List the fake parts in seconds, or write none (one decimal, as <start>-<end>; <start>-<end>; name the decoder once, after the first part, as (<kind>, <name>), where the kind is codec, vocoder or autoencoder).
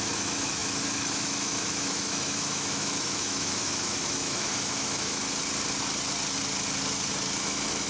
0.0-5.2 (autoencoder, DAC-VAE); 7.4-7.9